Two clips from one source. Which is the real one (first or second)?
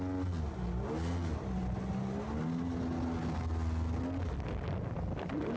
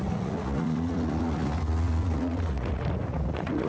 first